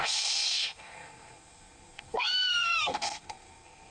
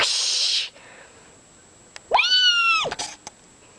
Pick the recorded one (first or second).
second